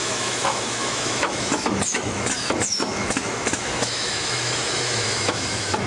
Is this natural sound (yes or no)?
no